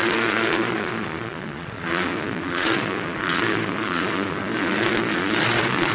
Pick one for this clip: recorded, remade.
remade